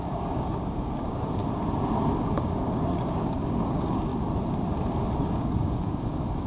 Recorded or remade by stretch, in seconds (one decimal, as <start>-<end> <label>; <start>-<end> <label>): 0.0-1.4 remade; 1.4-2.1 recorded; 2.1-4.1 remade; 4.1-5.2 recorded; 5.2-6.5 remade